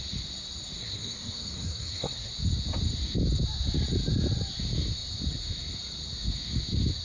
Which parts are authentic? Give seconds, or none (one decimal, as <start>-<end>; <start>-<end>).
0.0-0.8; 2.3-7.0